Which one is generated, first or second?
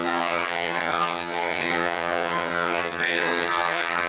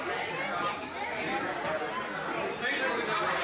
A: first